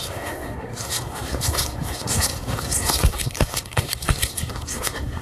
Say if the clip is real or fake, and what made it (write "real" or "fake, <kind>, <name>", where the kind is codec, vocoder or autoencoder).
fake, codec, SNAC